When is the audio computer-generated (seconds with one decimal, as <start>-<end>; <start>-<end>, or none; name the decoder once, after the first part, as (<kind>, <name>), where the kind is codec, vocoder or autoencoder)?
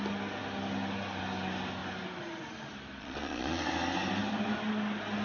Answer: 3.0-3.6 (vocoder, Vocos)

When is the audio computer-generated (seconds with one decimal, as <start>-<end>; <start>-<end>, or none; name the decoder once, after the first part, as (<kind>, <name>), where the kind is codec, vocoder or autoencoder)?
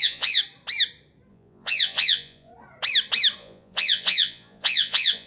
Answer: 0.0-0.4 (vocoder, Vocos); 1.3-2.5; 3.4-5.3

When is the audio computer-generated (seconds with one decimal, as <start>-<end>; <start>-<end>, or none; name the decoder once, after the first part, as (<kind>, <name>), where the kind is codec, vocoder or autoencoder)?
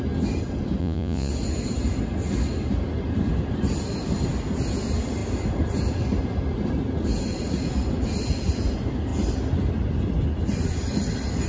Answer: 0.8-1.3 (vocoder, Vocos)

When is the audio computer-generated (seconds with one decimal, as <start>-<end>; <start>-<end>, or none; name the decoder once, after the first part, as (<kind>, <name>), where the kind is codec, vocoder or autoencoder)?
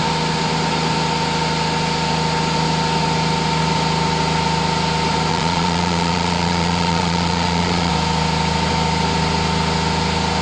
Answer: 5.3-7.9 (vocoder, Vocos)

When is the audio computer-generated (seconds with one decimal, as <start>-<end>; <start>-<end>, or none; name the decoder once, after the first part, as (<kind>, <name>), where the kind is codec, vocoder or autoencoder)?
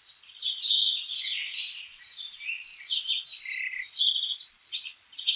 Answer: 0.0-1.6 (vocoder, Vocos); 4.3-5.4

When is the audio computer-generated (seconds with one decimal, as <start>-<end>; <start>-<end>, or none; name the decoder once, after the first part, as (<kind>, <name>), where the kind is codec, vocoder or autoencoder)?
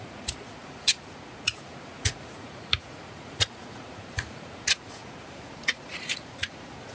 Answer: 0.0-6.9 (vocoder, Vocos)